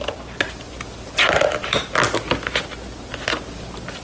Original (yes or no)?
yes